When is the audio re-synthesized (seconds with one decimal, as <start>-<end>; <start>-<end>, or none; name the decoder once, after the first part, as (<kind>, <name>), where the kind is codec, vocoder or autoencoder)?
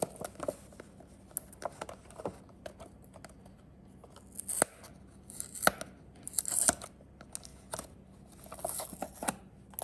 none